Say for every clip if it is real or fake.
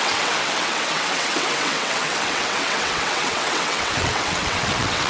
fake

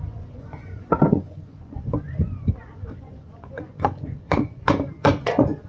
fake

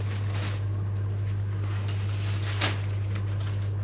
real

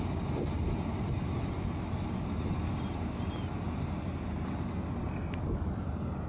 real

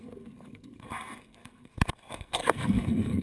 fake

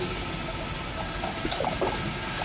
real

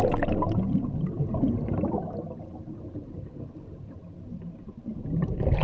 real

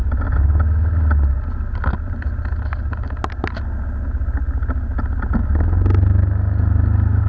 real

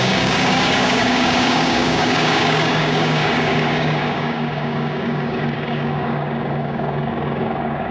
fake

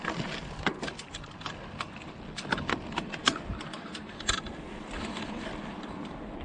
fake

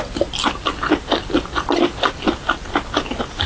real